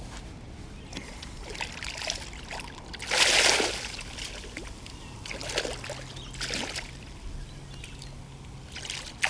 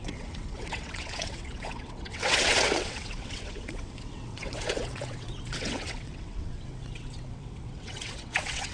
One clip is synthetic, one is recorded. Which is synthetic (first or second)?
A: second